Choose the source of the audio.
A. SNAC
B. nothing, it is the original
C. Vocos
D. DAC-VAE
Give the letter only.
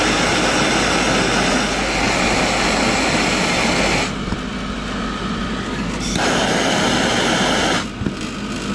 B